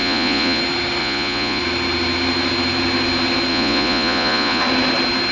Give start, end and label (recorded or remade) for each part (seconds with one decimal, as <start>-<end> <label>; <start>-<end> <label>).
0.0-0.6 remade; 0.6-1.0 recorded; 1.0-1.6 remade; 1.6-3.5 recorded; 3.5-4.6 remade; 4.6-5.3 recorded